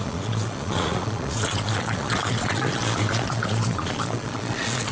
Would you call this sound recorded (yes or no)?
no